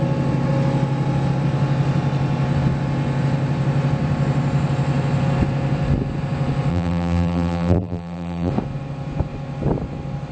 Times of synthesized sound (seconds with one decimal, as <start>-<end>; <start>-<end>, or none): 6.7-8.5